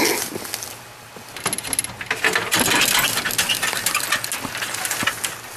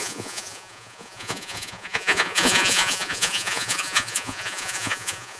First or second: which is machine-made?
second